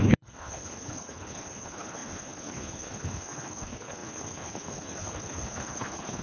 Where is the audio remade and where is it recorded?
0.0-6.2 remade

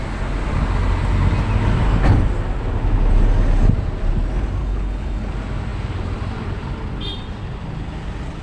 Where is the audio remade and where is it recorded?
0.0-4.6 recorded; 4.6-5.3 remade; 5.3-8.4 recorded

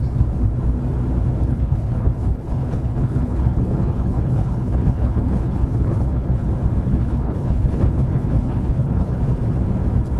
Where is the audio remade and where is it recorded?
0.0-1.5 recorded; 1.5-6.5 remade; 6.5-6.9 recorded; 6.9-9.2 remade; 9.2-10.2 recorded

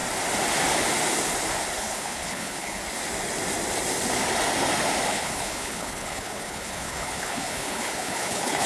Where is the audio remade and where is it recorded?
0.0-1.8 recorded; 1.8-2.8 remade; 2.8-5.1 recorded; 5.1-8.7 remade

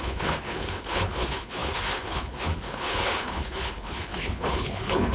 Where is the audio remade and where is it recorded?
0.0-5.1 remade